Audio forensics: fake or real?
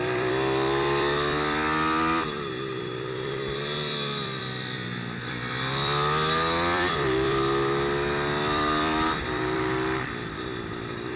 fake